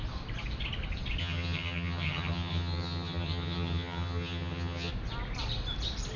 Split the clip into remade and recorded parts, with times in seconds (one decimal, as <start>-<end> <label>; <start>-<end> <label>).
0.0-1.2 recorded; 1.2-4.9 remade; 4.9-6.2 recorded